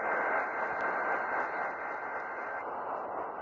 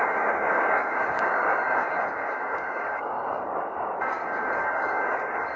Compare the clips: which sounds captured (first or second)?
first